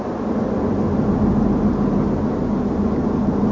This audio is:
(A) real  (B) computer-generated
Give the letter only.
A